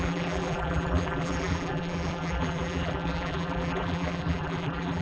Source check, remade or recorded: remade